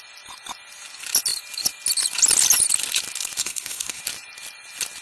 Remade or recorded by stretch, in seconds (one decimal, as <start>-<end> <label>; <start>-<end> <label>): 0.0-3.4 recorded; 3.4-4.0 remade; 4.0-5.0 recorded

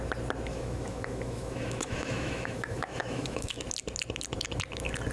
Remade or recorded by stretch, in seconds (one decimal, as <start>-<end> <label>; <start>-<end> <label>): 0.0-0.5 recorded; 0.5-3.6 remade; 3.6-5.1 recorded

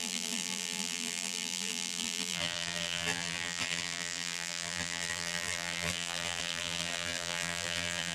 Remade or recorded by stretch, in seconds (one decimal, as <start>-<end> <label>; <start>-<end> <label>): 0.0-8.1 remade

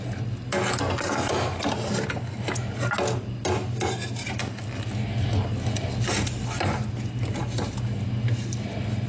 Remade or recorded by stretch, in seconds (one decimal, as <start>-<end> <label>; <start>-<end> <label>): 0.0-9.1 recorded

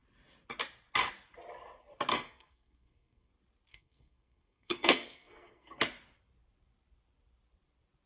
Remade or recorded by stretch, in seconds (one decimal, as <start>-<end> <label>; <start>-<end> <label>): 0.0-2.1 recorded; 2.1-3.3 remade; 3.3-3.7 recorded; 3.7-5.8 remade; 5.8-8.1 recorded

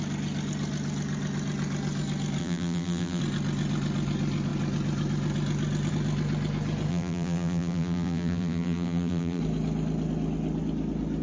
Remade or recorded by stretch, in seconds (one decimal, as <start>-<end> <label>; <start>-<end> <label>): 0.0-2.4 recorded; 2.4-3.2 remade; 3.2-6.9 recorded; 6.9-9.4 remade; 9.4-11.2 recorded

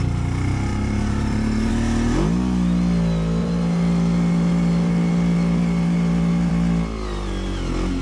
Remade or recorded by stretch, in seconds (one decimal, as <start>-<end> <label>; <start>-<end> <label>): 0.0-0.7 recorded; 0.7-1.7 remade; 1.7-3.4 recorded; 3.4-6.5 remade; 6.5-8.0 recorded

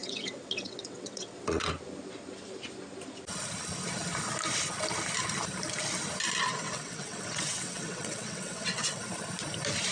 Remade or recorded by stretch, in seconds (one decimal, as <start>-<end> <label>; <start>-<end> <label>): 0.0-1.7 remade; 1.7-6.5 recorded; 6.5-9.0 remade; 9.0-9.9 recorded